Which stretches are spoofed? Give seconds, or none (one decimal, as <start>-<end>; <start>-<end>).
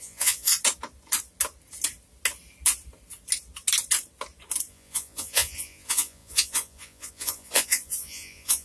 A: 0.0-0.5; 4.7-8.6